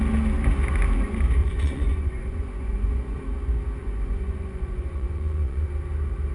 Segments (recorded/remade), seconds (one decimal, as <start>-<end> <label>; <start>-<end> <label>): 0.0-1.4 recorded; 1.4-3.2 remade; 3.2-3.8 recorded; 3.8-5.7 remade; 5.7-6.3 recorded